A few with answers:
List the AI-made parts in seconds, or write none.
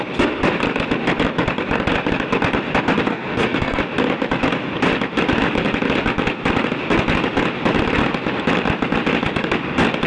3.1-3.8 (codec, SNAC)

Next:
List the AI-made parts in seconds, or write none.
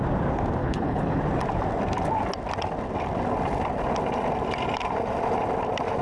0.6-1.2 (codec, HILCodec)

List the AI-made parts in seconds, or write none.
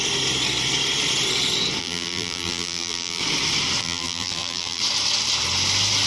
1.8-3.2 (vocoder, BigVGAN v2); 3.8-4.8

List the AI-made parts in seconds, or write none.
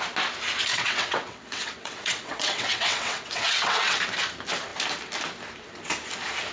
0.7-4.0 (vocoder, WaveNeXt)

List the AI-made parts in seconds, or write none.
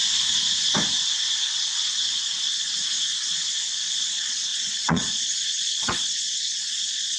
4.0-7.2 (vocoder, Vocos)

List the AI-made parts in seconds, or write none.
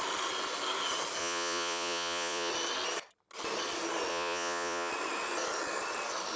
1.2-2.5 (vocoder, Vocos); 4.1-4.9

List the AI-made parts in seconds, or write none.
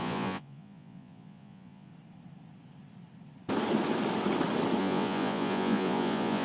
0.0-1.9 (vocoder, Vocos); 4.8-6.4